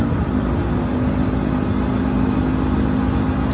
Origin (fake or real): real